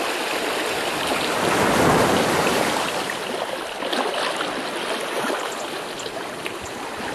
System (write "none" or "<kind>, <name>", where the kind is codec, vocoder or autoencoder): none